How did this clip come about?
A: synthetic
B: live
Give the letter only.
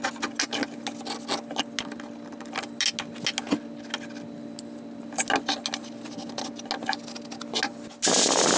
B